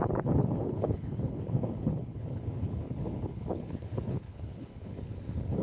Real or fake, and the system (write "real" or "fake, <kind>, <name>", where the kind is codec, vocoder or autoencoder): fake, codec, HILCodec